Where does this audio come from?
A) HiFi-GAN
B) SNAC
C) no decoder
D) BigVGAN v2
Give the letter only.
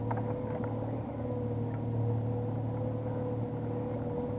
C